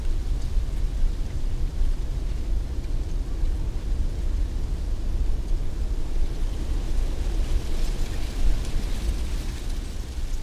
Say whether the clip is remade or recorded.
recorded